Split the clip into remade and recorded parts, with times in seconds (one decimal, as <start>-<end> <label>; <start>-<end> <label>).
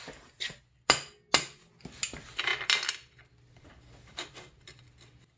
0.0-5.4 recorded